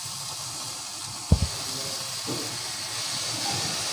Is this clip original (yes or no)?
yes